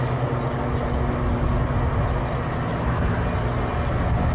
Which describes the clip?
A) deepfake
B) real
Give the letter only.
B